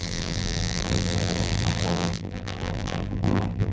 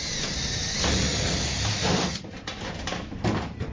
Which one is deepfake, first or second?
first